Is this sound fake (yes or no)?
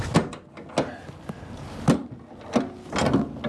no